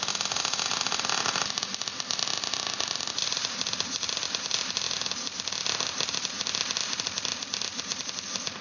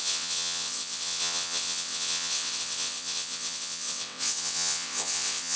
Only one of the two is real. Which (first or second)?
first